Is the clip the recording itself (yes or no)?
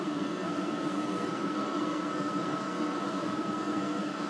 no